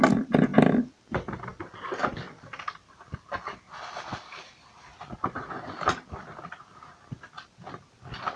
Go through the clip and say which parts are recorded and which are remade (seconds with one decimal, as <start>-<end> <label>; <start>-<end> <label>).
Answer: 0.0-8.4 recorded